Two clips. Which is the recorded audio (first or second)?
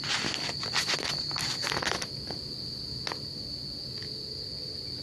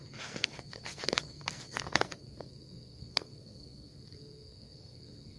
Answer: first